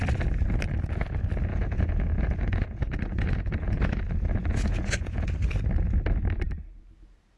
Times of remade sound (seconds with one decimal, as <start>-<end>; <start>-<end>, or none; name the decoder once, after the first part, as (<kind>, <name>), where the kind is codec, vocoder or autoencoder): 1.5-5.3 (vocoder, Vocos)